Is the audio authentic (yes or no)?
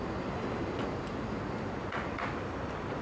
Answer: yes